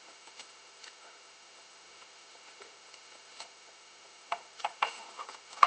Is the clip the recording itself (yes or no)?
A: no